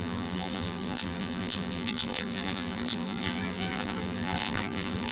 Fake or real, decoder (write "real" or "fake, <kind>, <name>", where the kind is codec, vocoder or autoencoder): fake, vocoder, BigVGAN v2